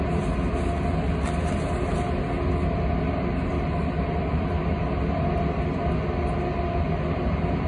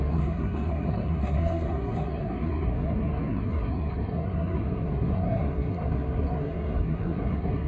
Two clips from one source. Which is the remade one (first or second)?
second